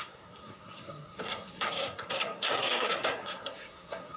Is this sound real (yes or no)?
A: no